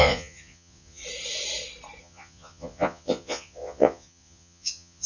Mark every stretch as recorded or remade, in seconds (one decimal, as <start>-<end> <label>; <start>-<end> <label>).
0.0-1.0 remade; 1.0-2.0 recorded; 2.0-5.1 remade